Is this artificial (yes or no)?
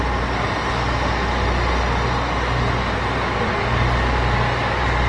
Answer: no